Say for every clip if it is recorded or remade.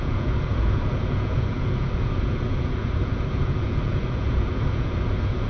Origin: remade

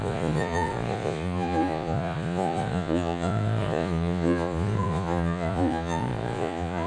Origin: remade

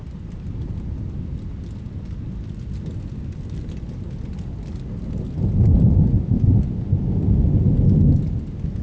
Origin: recorded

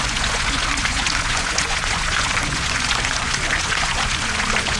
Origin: remade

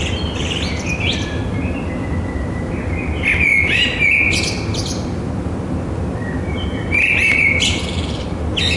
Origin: recorded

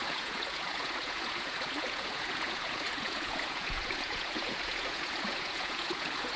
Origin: remade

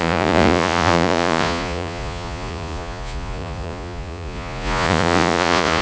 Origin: remade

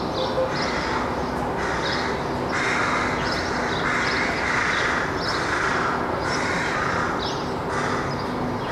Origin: recorded